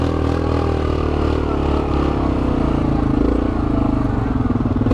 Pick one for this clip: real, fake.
real